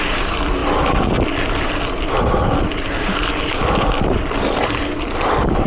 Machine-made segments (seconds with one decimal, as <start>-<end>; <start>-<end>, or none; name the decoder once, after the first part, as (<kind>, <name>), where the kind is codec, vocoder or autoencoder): none